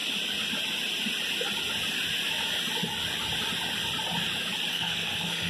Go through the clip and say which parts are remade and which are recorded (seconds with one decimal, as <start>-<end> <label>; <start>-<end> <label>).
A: 0.0-4.7 recorded; 4.7-5.5 remade